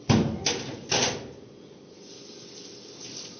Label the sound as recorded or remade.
recorded